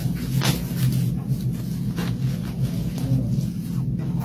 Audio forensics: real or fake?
real